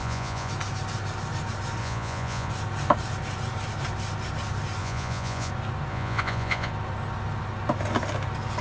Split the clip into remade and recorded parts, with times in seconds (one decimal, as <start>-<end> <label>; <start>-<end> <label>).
0.0-0.5 remade; 0.5-1.8 recorded; 1.8-2.5 remade; 2.5-4.8 recorded; 4.8-5.5 remade; 5.5-5.9 recorded; 5.9-6.7 remade; 6.7-8.6 recorded